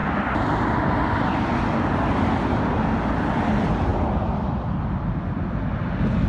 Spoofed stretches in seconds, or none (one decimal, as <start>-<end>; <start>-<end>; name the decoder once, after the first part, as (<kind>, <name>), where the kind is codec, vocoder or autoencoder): none